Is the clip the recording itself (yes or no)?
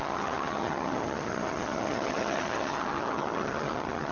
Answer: no